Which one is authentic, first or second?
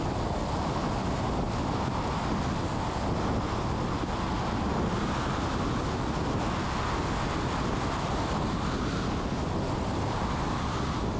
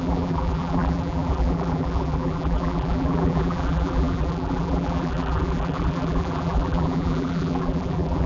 first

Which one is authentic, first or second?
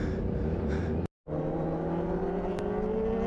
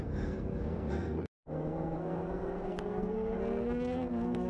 first